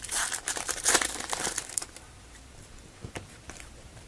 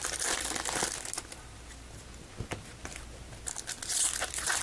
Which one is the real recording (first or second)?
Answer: second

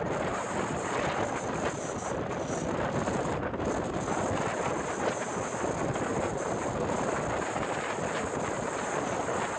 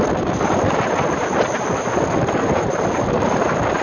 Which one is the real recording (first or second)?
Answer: first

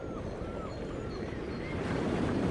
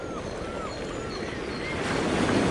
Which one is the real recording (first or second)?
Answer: second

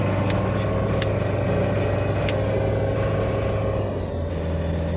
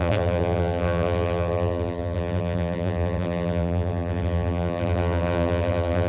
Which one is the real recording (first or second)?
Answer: first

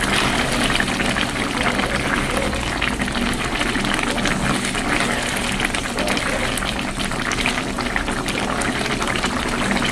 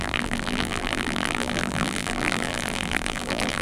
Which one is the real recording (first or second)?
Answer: first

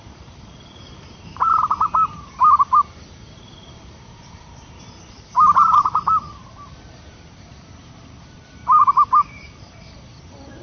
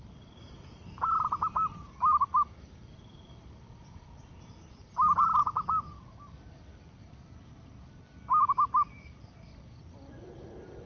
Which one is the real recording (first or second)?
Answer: second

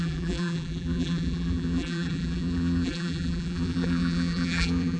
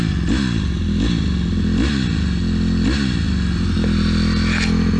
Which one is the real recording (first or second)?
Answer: second